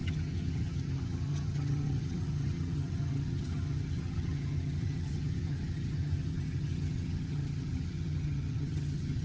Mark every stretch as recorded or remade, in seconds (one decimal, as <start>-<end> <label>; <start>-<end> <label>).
0.0-9.2 remade